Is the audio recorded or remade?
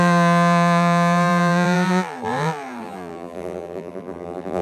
remade